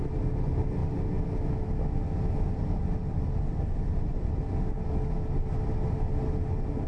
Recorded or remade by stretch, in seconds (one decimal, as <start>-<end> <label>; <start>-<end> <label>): 0.0-6.9 recorded